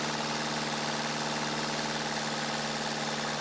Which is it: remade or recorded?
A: recorded